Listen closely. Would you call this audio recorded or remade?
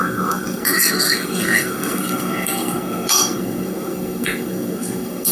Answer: remade